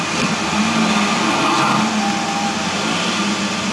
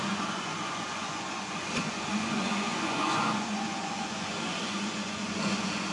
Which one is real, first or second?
first